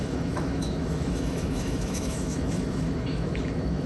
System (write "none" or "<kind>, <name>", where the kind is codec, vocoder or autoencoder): autoencoder, DAC-VAE